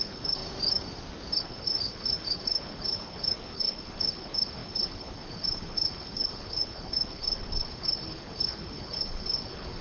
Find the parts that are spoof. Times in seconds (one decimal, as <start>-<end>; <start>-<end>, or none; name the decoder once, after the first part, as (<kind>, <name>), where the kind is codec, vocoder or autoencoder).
0.0-0.4 (codec, HILCodec); 1.4-9.8